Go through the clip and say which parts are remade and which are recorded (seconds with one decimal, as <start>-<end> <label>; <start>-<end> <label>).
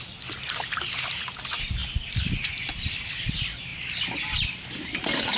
0.0-5.4 recorded